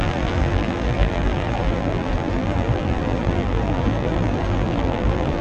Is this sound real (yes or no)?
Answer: no